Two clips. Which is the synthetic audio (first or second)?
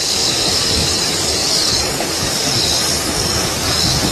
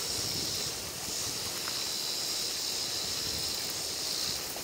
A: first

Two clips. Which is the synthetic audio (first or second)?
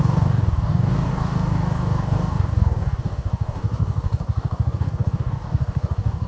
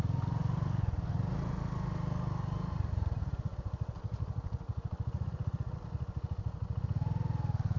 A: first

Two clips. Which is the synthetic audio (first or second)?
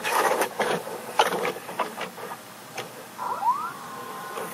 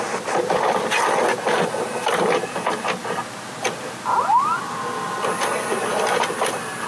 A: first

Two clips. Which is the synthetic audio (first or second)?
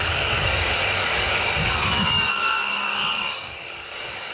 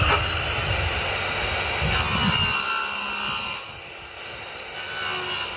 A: first